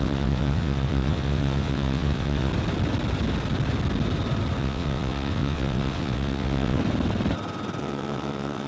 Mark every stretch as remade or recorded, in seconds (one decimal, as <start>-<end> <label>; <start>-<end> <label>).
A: 0.0-2.5 remade; 2.5-4.6 recorded; 4.6-6.8 remade; 6.8-7.8 recorded; 7.8-8.7 remade